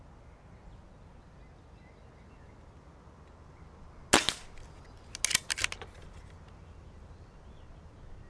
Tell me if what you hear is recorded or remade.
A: recorded